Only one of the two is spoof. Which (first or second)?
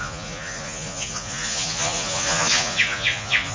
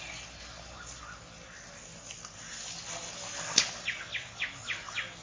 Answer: first